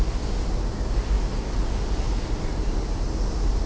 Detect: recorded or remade recorded